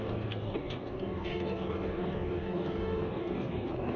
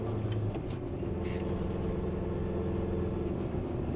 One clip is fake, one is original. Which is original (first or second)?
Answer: second